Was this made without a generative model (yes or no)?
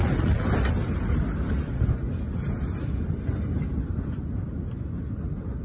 yes